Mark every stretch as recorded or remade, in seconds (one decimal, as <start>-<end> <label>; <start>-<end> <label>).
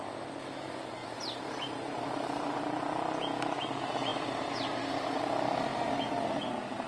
0.0-1.0 recorded; 1.0-2.6 remade; 2.6-4.1 recorded; 4.1-5.2 remade; 5.2-5.7 recorded; 5.7-6.4 remade; 6.4-6.9 recorded